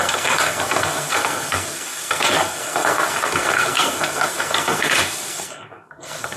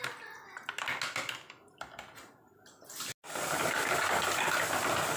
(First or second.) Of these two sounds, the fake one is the first